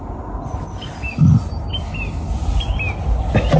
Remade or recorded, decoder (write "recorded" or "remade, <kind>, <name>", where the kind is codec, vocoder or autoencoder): recorded